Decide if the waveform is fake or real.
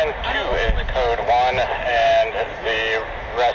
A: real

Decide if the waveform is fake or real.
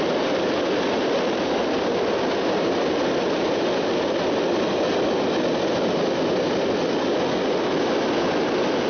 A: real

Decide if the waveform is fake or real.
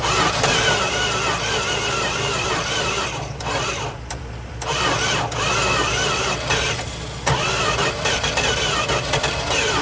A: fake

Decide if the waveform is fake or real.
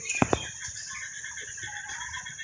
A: fake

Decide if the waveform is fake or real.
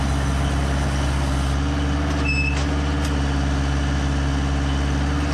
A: real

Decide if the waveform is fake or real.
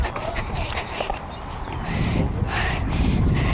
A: fake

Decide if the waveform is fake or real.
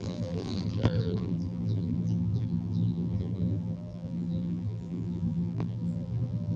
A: fake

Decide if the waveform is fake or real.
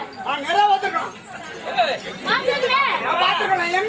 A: real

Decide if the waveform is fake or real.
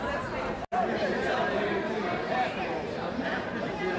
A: fake